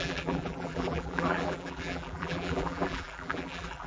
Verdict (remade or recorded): remade